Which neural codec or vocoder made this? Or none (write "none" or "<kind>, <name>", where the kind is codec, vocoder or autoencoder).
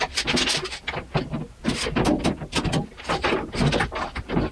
none